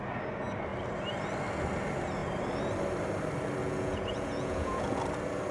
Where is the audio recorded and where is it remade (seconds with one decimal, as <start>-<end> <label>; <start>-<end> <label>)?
0.0-3.6 recorded; 3.6-5.0 remade; 5.0-5.5 recorded